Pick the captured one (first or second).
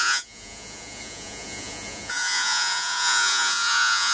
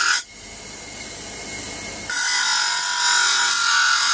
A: second